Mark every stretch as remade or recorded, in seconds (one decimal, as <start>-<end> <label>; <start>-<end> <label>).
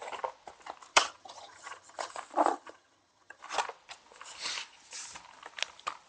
0.0-0.9 recorded; 0.9-2.1 remade; 2.1-2.5 recorded; 2.5-3.4 remade; 3.4-6.1 recorded